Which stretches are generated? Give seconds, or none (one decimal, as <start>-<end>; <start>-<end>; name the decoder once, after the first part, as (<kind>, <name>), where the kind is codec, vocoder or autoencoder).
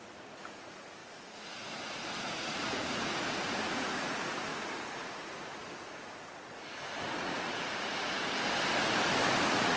0.0-8.2 (vocoder, Vocos); 9.4-9.8